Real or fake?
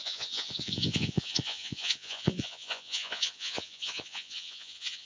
fake